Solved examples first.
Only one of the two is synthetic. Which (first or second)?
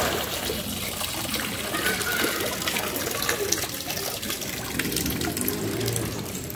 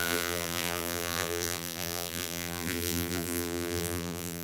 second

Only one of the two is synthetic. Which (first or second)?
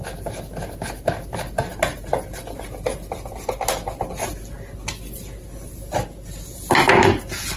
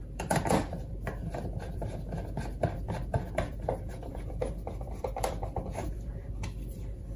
second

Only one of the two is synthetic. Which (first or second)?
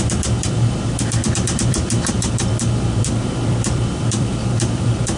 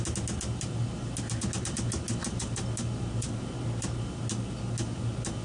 first